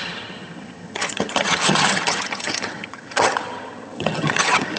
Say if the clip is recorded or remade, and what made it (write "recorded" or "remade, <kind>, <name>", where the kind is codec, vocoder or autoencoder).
remade, vocoder, HiFi-GAN